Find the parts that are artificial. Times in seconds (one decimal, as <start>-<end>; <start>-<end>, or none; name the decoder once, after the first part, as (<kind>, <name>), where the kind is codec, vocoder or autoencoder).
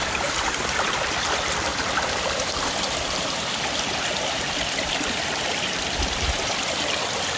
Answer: 0.0-7.4 (vocoder, BigVGAN v2)